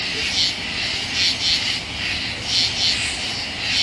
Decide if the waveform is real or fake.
real